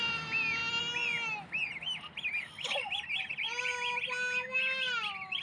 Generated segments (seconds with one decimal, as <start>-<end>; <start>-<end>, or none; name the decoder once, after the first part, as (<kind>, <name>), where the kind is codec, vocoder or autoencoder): none